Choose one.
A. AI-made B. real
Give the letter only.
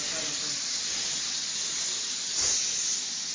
B